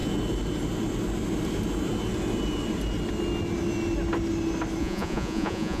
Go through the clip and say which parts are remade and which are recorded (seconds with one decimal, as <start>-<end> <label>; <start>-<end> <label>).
0.0-4.8 recorded; 4.8-5.8 remade